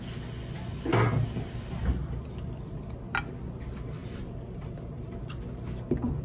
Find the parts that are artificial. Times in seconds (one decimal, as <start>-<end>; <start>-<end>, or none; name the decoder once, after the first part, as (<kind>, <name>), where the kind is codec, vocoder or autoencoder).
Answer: 4.0-5.2 (vocoder, BigVGAN v2)